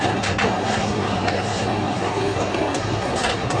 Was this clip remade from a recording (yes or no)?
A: yes